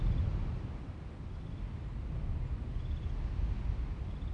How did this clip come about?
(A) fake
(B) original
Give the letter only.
B